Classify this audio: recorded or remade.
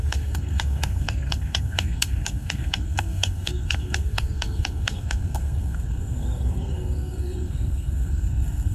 remade